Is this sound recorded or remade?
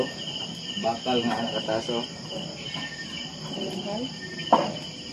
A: recorded